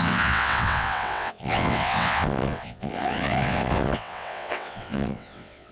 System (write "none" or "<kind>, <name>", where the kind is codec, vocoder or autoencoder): vocoder, WaveNeXt